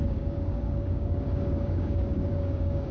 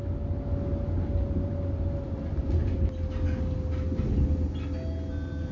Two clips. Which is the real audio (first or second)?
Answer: second